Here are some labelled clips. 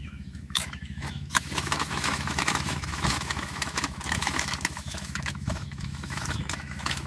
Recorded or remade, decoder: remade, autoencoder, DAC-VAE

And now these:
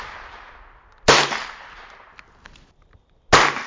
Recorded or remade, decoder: recorded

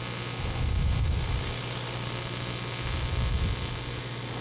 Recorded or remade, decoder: recorded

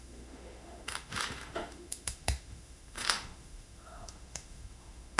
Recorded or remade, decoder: remade, autoencoder, DAC-VAE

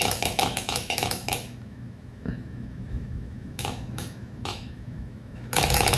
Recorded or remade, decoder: remade, autoencoder, DAC-VAE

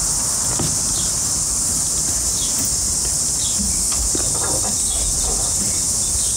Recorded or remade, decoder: recorded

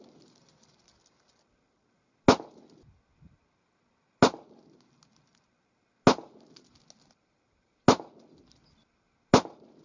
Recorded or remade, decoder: recorded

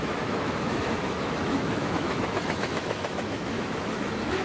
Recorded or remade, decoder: remade, autoencoder, DAC-VAE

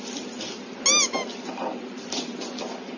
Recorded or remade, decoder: recorded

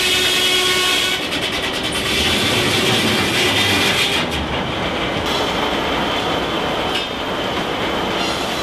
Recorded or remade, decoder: recorded